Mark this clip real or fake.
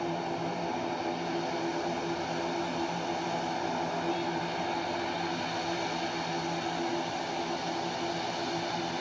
real